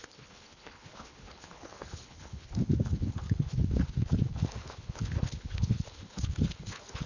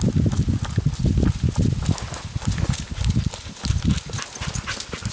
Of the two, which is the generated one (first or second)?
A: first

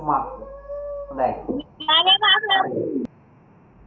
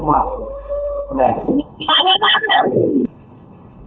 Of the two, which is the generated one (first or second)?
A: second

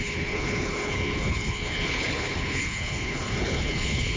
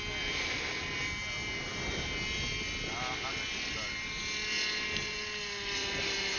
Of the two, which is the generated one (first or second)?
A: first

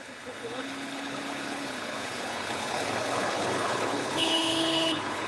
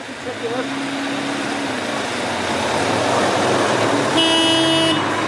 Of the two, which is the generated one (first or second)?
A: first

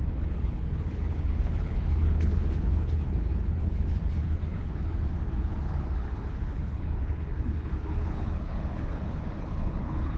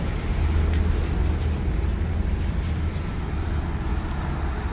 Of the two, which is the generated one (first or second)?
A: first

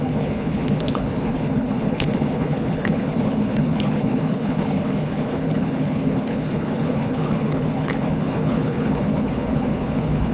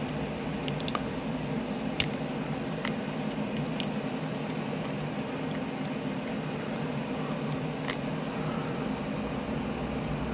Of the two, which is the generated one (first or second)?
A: first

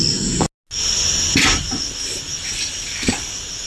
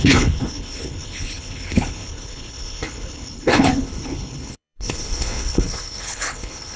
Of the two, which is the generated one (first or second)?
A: second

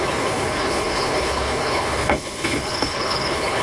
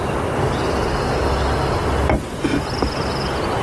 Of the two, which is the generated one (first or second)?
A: first